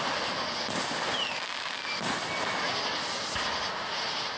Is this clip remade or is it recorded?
recorded